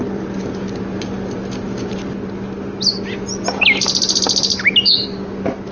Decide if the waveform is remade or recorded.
recorded